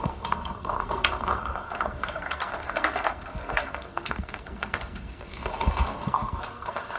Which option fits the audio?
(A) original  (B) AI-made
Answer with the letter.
B